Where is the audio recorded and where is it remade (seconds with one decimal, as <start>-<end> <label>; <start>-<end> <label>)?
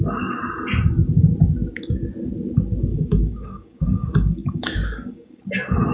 0.0-2.9 recorded; 2.9-5.4 remade; 5.4-5.9 recorded